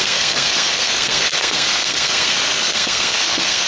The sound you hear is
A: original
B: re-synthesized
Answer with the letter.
B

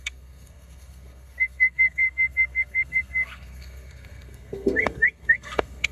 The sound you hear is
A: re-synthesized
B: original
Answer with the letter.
A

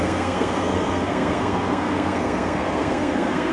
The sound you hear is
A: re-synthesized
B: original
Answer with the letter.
A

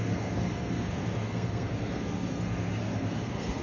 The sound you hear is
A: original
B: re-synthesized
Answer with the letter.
B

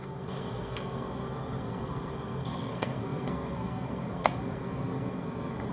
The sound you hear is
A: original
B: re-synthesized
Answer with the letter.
B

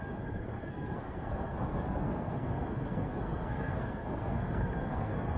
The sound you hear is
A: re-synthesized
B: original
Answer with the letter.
A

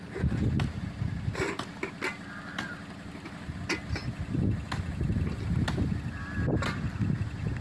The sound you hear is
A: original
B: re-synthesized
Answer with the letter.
A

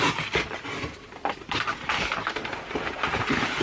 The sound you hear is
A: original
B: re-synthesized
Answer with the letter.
A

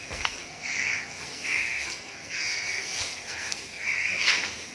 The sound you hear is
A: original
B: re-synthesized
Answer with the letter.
B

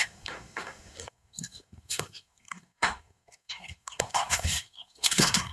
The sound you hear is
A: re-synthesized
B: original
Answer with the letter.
A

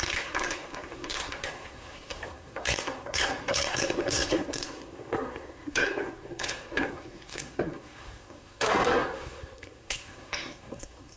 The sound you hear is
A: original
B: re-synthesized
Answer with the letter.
B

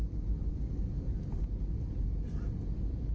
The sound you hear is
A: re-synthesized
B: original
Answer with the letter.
B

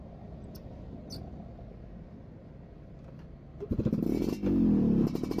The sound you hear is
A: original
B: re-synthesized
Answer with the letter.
A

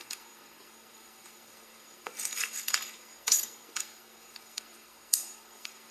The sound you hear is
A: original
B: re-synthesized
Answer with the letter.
B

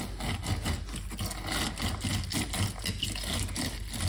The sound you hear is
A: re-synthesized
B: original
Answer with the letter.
B